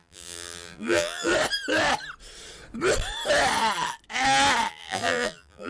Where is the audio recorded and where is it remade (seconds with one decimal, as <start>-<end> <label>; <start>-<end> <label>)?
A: 0.0-1.3 remade; 1.3-4.7 recorded; 4.7-5.7 remade